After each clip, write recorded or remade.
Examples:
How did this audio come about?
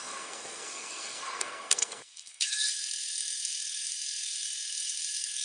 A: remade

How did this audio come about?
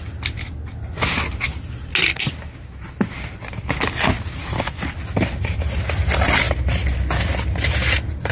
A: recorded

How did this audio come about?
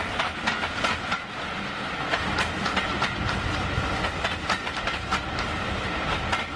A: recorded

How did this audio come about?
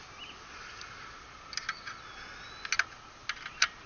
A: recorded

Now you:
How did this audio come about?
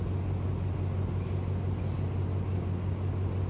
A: recorded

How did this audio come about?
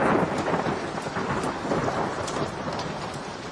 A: recorded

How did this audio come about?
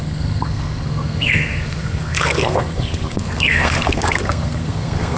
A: remade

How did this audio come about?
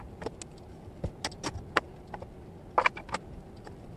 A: recorded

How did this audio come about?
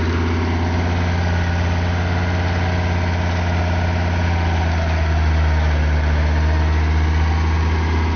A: recorded